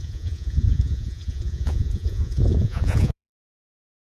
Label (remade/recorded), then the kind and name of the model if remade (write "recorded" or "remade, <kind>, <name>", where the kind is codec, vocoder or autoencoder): remade, vocoder, Vocos